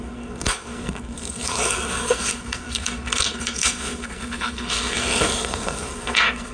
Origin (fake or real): fake